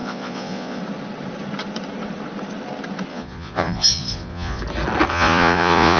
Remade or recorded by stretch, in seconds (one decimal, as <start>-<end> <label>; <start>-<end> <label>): 0.0-0.8 remade; 0.8-3.1 recorded; 3.1-4.6 remade; 4.6-5.1 recorded; 5.1-6.0 remade